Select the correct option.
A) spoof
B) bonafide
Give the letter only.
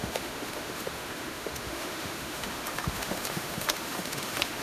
A